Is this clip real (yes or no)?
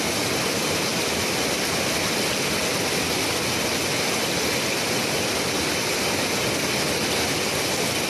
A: yes